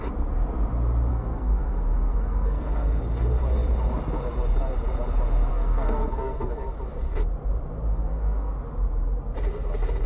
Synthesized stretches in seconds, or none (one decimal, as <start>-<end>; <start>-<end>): 1.1-3.0; 5.5-6.5; 7.9-8.5